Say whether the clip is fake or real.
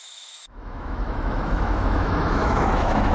fake